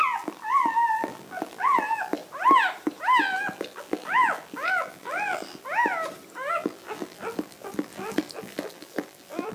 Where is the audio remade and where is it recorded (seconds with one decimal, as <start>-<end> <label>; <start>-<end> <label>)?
0.0-2.2 remade; 2.2-3.2 recorded; 3.2-5.9 remade; 5.9-6.5 recorded; 6.5-9.5 remade